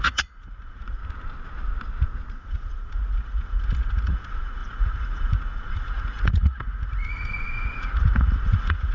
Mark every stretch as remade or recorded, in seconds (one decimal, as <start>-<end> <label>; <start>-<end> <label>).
0.0-1.0 remade; 1.0-2.3 recorded; 2.3-8.9 remade